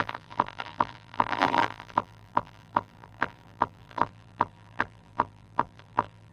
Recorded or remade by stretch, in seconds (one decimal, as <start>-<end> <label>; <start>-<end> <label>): 0.0-6.3 remade

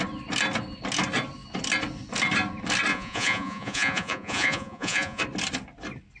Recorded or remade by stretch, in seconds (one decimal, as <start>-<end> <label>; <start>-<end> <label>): 0.0-2.9 recorded; 2.9-5.2 remade; 5.2-6.2 recorded

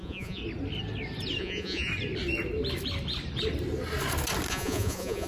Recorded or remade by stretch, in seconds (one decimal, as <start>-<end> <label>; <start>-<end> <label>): 0.0-0.4 remade; 0.4-1.4 recorded; 1.4-1.9 remade; 1.9-4.5 recorded; 4.5-5.3 remade

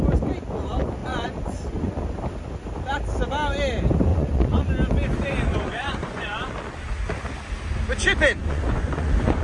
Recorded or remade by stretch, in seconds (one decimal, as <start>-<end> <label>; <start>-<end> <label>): 0.0-1.0 recorded; 1.0-2.0 remade; 2.0-4.1 recorded; 4.1-4.7 remade; 4.7-5.5 recorded; 5.5-6.5 remade; 6.5-8.4 recorded; 8.4-9.4 remade

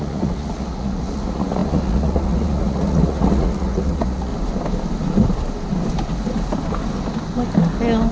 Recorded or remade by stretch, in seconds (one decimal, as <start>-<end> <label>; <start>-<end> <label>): 0.0-4.3 remade; 4.3-8.1 recorded